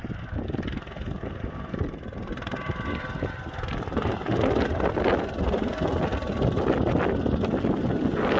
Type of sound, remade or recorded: recorded